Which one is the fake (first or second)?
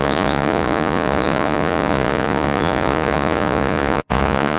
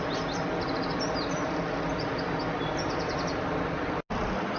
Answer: first